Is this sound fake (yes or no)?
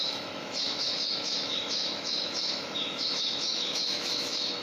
yes